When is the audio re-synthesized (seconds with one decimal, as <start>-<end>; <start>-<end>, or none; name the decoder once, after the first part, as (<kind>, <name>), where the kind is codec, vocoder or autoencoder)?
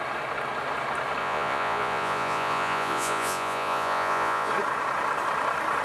1.2-4.5 (vocoder, Vocos)